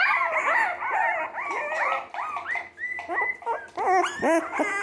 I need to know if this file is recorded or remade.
recorded